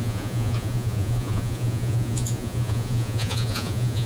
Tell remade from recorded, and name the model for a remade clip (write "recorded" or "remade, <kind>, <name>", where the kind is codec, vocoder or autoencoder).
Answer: remade, vocoder, Vocos